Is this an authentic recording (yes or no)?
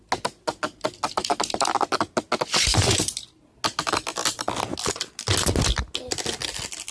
yes